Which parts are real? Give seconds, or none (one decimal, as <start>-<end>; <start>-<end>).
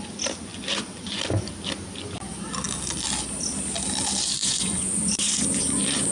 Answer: 0.0-0.5; 1.2-4.4